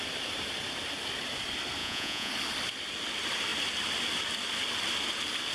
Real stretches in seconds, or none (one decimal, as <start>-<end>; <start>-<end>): 0.0-1.8; 2.3-5.5